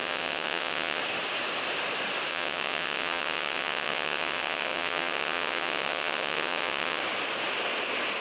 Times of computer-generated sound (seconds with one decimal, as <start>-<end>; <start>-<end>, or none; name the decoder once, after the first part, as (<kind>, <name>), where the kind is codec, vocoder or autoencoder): 0.0-1.0 (vocoder, WaveNeXt); 2.3-7.0